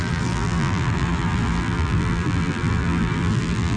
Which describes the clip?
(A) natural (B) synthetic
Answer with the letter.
B